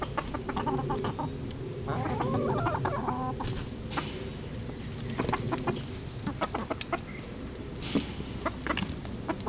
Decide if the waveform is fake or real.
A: real